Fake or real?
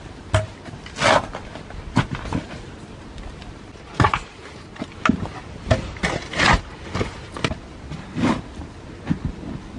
real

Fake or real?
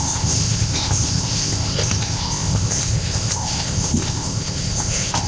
fake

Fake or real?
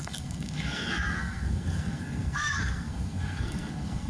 fake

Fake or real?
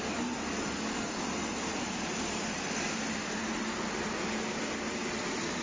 real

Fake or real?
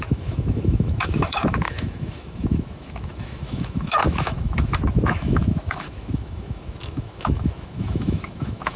fake